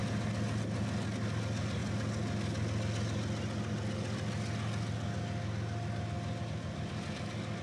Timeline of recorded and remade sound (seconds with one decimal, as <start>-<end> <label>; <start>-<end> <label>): 0.0-7.6 recorded